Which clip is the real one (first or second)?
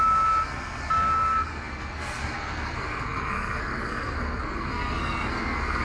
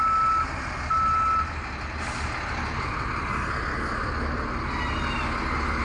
second